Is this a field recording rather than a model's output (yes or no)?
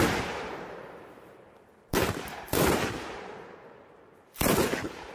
no